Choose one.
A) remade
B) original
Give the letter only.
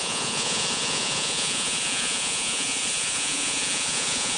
A